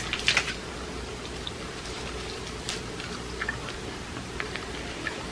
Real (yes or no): no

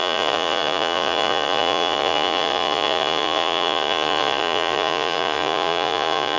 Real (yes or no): no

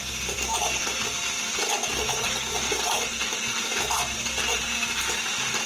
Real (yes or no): yes